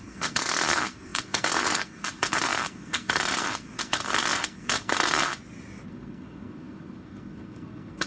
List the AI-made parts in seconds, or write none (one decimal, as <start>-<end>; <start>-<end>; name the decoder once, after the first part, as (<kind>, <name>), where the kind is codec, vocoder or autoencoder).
0.0-5.3 (codec, SNAC); 5.9-8.1